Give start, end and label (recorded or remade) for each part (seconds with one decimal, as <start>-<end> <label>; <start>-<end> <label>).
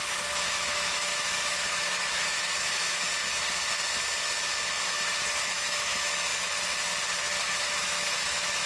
0.0-3.1 remade; 3.1-4.8 recorded; 4.8-6.3 remade; 6.3-7.4 recorded; 7.4-8.7 remade